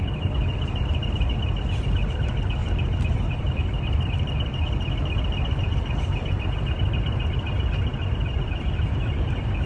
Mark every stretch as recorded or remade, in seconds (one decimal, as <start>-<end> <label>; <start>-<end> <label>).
0.0-2.6 recorded; 2.6-4.9 remade; 4.9-7.9 recorded; 7.9-8.7 remade; 8.7-9.7 recorded